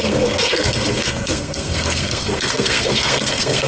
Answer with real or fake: fake